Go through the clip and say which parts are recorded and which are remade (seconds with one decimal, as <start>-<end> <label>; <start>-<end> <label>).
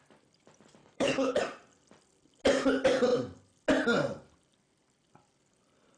0.0-0.8 recorded; 0.8-1.4 remade; 1.4-6.0 recorded